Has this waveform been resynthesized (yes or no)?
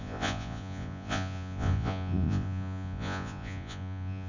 yes